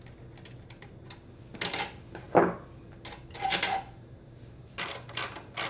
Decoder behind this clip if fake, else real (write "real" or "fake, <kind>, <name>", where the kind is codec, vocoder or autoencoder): real